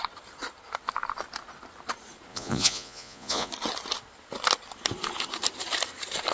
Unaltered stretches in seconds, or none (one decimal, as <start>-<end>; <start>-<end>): 0.0-2.3; 3.5-6.3